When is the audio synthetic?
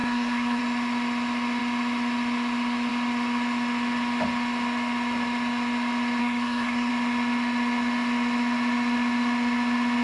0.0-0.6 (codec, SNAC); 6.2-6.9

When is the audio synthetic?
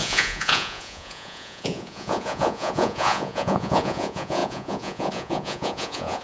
0.0-6.2 (vocoder, Vocos)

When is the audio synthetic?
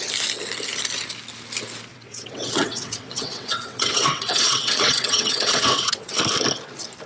1.9-6.2 (vocoder, WaveNeXt)